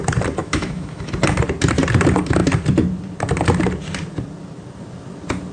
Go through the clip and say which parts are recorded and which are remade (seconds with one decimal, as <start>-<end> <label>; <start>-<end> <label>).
0.0-0.4 recorded; 0.4-1.1 remade; 1.1-5.5 recorded